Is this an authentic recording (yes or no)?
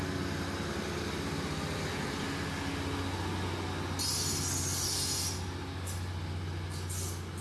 yes